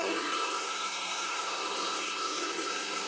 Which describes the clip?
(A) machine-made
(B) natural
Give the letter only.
A